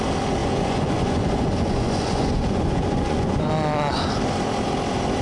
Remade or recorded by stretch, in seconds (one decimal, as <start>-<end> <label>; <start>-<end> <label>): 0.0-0.4 recorded; 0.4-3.5 remade; 3.5-5.2 recorded